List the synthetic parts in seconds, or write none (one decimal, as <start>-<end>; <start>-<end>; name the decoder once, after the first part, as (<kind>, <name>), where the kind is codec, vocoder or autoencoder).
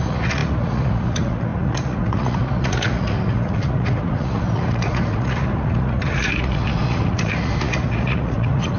0.0-8.8 (vocoder, Vocos)